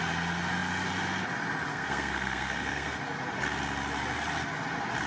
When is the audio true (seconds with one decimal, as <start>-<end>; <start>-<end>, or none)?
0.0-1.7; 3.0-5.1